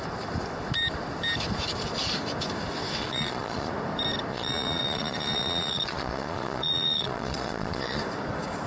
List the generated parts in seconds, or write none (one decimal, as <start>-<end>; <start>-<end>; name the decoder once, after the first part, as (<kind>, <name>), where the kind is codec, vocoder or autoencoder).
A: 3.0-3.7 (vocoder, Vocos); 4.3-8.0